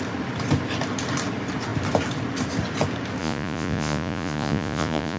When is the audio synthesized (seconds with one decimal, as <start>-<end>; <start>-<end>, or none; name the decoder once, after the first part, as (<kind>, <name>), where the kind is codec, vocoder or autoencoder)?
3.2-5.2 (vocoder, Vocos)